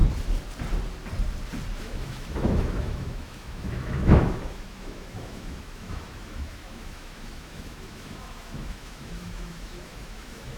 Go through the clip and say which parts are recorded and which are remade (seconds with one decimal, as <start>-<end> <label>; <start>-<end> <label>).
0.0-1.8 recorded; 1.8-10.6 remade